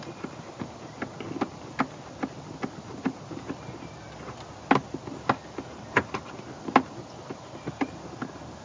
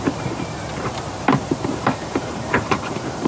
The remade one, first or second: second